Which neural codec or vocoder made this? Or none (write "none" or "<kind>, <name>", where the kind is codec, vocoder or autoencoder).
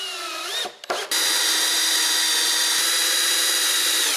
none